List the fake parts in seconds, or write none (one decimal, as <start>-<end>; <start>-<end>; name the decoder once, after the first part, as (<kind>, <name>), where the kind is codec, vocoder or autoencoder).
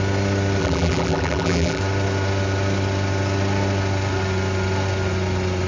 0.6-1.8 (vocoder, BigVGAN v2)